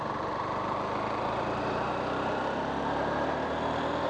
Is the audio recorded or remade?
recorded